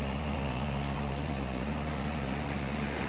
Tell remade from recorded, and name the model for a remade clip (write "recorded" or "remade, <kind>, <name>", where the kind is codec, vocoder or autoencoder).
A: remade, vocoder, Vocos